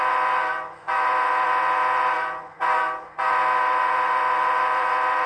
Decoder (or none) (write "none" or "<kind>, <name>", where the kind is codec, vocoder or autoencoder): vocoder, Vocos